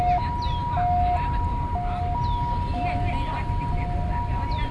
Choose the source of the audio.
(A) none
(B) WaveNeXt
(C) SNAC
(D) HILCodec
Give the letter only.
A